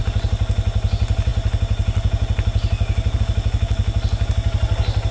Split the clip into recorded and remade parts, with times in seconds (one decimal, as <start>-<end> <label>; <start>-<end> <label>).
0.0-5.1 recorded